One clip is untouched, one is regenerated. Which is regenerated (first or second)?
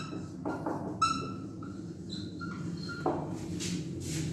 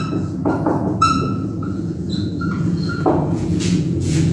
second